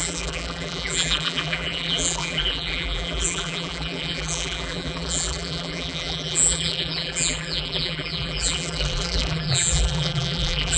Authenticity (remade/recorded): remade